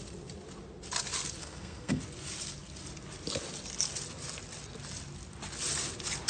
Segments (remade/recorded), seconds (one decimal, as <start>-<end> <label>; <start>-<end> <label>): 0.0-1.4 recorded; 1.4-2.0 remade; 2.0-6.3 recorded